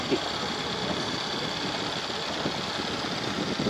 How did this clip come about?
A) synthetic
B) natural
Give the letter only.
B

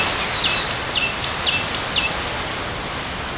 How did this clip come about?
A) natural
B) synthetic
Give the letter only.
A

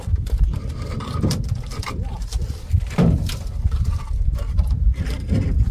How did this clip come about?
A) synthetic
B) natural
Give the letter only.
A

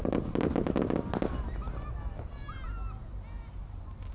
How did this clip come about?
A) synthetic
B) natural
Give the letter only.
B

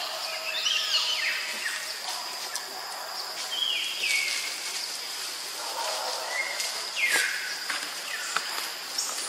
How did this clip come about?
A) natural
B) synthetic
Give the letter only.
A